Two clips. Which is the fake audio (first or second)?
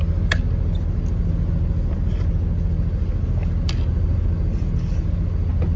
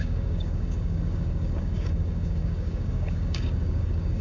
second